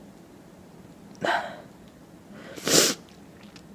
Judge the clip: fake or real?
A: real